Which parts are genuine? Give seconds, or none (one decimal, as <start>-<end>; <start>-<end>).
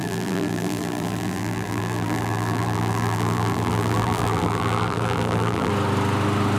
5.7-6.6